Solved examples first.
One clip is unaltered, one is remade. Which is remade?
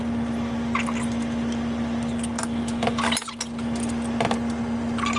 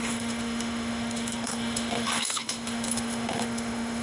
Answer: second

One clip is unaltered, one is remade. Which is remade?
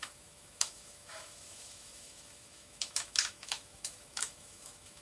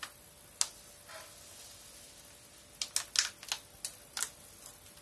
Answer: first